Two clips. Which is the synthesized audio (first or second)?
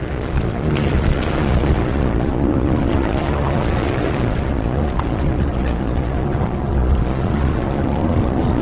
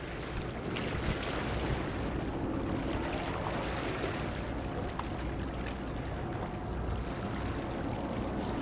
first